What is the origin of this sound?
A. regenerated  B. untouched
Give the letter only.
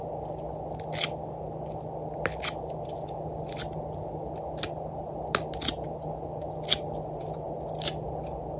B